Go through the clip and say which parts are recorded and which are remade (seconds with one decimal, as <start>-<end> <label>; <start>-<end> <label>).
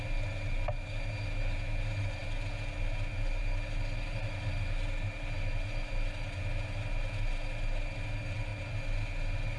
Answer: 0.0-9.6 recorded